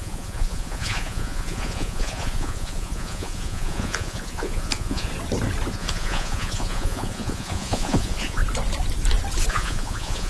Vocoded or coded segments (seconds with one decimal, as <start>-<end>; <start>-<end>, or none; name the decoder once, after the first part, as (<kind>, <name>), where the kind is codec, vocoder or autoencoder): 0.0-5.1 (vocoder, Vocos); 5.7-8.4; 9.5-10.3